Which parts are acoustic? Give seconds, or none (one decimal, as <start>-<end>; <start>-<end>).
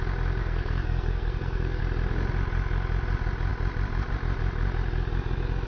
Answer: 0.0-0.4; 1.8-5.7